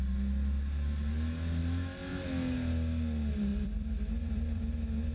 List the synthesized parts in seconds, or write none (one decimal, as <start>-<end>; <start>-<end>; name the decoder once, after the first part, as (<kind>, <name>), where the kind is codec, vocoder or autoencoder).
3.5-4.6 (vocoder, BigVGAN v2)